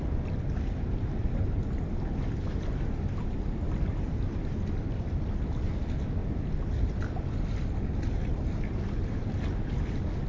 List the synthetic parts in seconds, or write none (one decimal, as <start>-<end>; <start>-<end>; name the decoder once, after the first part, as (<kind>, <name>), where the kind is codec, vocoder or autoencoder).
none